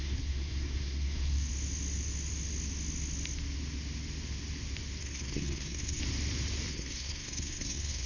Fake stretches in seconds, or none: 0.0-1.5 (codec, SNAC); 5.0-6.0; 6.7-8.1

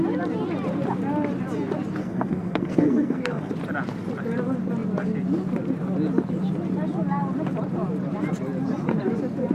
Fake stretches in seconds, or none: 2.0-3.5 (codec, SNAC)